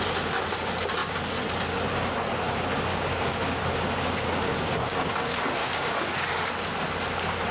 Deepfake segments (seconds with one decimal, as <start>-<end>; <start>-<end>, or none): 2.9-3.7; 4.5-5.1; 5.6-6.5